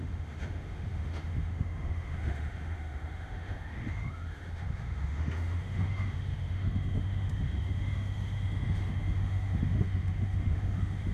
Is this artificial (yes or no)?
yes